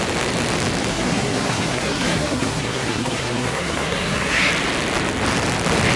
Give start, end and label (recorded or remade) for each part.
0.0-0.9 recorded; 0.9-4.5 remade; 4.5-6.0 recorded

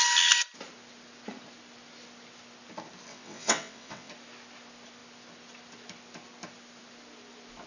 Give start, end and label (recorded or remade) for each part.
0.0-3.1 recorded; 3.1-4.1 remade; 4.1-7.7 recorded

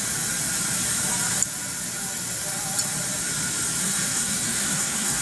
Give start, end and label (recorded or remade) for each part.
0.0-3.8 recorded; 3.8-5.2 remade

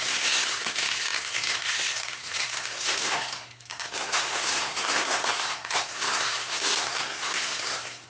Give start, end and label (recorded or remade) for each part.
0.0-8.1 remade

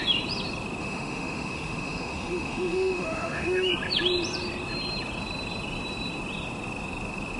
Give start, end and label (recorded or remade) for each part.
0.0-0.8 recorded; 0.8-3.7 remade; 3.7-7.4 recorded

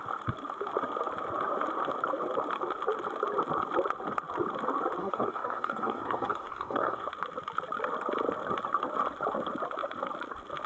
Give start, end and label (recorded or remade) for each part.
0.0-5.0 recorded; 5.0-7.1 remade; 7.1-10.7 recorded

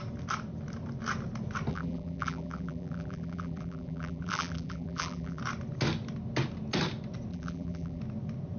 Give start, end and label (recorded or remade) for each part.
0.0-1.7 recorded; 1.7-5.4 remade; 5.4-7.3 recorded; 7.3-8.0 remade; 8.0-8.6 recorded